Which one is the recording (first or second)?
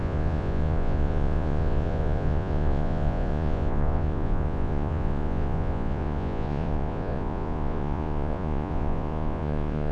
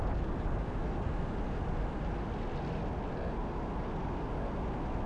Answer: second